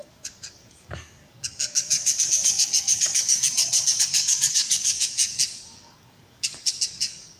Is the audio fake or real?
fake